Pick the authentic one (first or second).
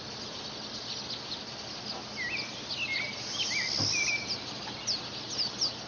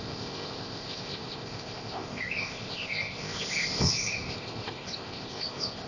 first